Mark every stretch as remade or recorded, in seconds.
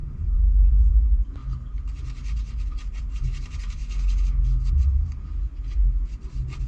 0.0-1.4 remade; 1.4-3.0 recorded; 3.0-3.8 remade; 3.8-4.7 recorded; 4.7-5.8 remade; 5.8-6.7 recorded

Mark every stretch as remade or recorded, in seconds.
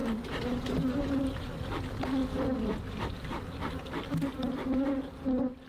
0.0-5.7 recorded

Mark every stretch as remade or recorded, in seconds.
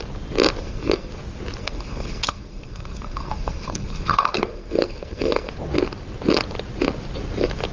0.0-0.6 recorded; 0.6-1.1 remade; 1.1-1.6 recorded; 1.6-5.5 remade; 5.5-7.7 recorded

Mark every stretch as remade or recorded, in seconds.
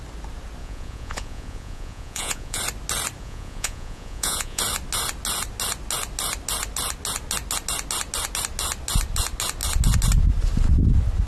0.0-0.6 recorded; 0.6-2.6 remade; 2.6-3.2 recorded; 3.2-4.6 remade; 4.6-11.3 recorded